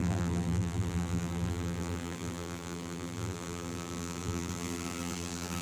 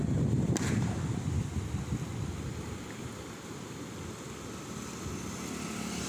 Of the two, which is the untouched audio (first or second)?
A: second